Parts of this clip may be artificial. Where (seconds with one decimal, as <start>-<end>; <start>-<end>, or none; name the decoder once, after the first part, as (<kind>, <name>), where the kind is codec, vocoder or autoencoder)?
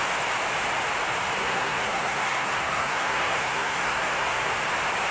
1.4-4.5 (codec, SNAC)